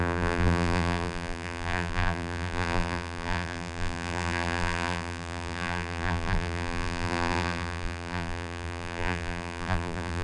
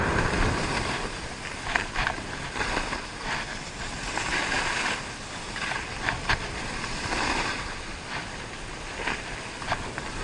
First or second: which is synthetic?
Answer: first